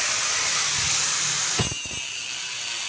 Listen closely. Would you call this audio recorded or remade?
recorded